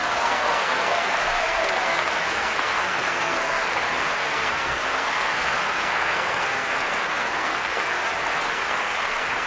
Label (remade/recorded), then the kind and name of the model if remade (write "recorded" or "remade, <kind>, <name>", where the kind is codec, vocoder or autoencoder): remade, codec, SNAC